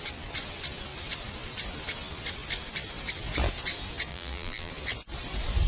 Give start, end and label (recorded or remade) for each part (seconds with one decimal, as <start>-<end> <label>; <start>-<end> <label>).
0.0-4.1 recorded; 4.1-4.7 remade; 4.7-5.7 recorded